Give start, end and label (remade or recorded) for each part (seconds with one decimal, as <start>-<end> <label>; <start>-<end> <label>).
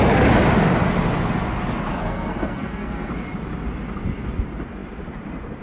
0.0-1.9 recorded; 1.9-3.1 remade; 3.1-5.6 recorded